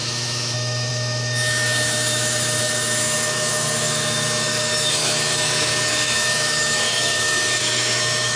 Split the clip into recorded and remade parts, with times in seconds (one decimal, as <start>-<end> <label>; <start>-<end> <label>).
0.0-8.4 remade